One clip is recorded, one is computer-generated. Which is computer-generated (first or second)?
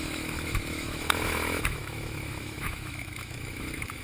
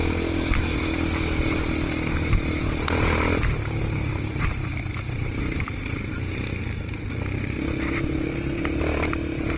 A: first